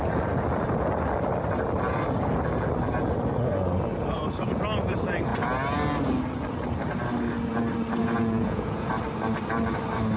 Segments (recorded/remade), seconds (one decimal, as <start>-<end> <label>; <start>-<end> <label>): 0.0-8.0 recorded; 8.0-8.9 remade; 8.9-10.2 recorded